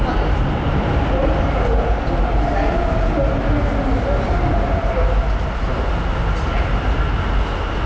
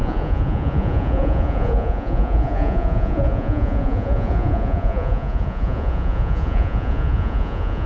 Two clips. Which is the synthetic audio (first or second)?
second